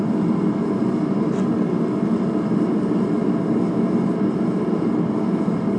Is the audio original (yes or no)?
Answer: yes